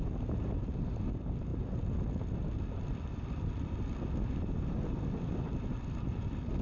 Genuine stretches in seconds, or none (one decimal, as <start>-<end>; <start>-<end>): 0.0-6.6